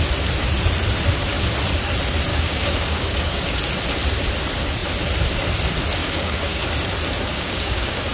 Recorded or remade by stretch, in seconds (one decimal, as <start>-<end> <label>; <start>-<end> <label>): 0.0-2.3 recorded; 2.3-3.6 remade; 3.6-6.0 recorded; 6.0-6.6 remade; 6.6-7.3 recorded; 7.3-8.1 remade